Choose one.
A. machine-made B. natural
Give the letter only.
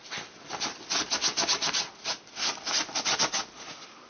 B